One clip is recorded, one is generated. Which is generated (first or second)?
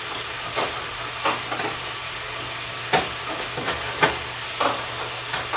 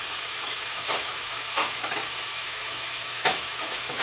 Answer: second